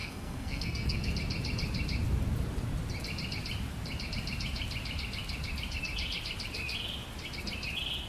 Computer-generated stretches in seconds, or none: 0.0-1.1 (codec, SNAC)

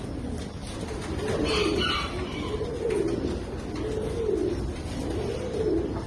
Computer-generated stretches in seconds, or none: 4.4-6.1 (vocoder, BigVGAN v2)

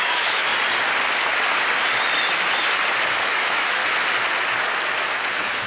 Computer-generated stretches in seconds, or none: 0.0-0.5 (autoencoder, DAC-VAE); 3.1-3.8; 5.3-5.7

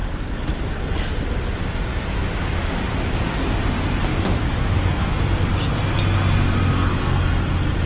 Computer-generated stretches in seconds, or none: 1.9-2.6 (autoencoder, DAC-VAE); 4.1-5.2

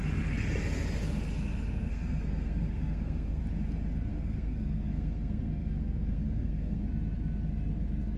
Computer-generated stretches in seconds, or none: 1.8-3.4 (codec, SNAC); 4.1-6.8